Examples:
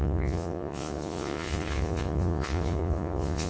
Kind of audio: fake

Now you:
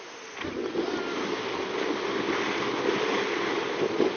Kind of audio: real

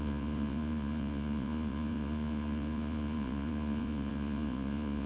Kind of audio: fake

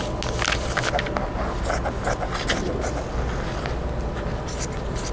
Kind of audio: real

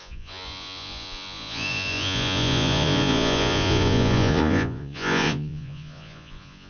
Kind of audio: fake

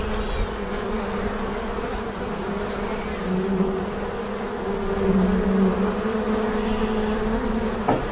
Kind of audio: real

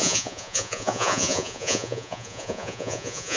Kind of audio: fake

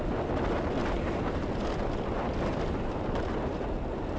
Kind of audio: real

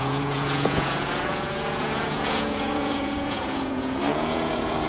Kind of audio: fake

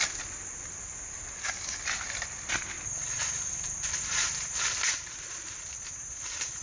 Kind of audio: real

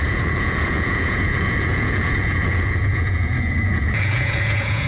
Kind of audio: fake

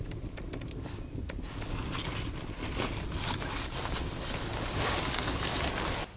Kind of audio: real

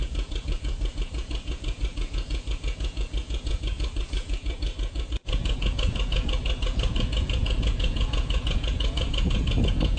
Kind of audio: fake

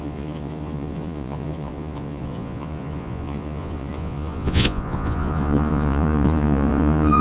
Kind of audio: fake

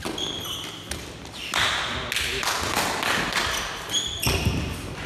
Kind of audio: real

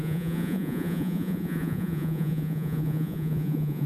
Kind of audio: fake